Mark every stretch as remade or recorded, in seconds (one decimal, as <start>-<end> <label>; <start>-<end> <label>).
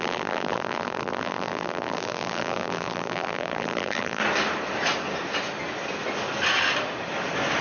0.0-4.2 remade; 4.2-7.6 recorded